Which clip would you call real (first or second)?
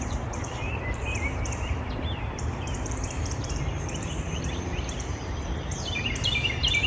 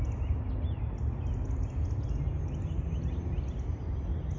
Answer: second